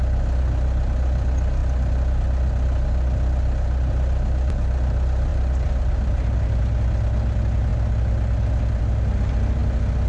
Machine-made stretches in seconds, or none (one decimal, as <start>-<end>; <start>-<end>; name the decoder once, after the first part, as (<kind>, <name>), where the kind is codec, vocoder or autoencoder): none